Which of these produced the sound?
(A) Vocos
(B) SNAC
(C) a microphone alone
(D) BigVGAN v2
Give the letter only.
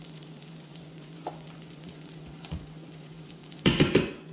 A